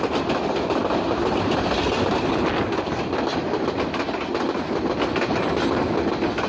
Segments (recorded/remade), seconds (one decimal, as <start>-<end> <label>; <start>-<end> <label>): 0.0-6.5 recorded